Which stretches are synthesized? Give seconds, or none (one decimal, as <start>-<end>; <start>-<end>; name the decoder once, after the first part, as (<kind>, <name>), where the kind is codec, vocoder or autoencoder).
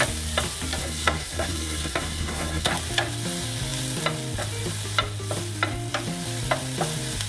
0.8-2.7 (codec, SNAC)